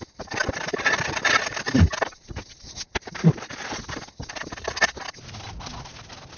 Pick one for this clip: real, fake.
real